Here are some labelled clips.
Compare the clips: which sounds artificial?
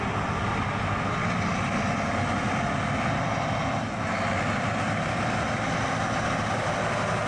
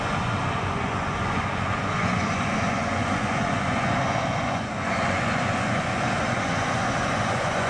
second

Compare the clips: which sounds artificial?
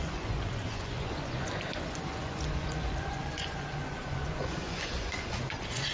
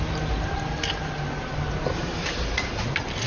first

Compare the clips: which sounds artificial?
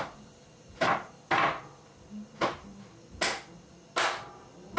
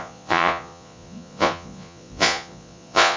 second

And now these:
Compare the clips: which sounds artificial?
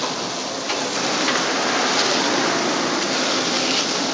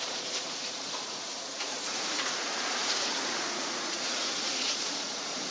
second